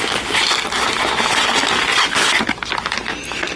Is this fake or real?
real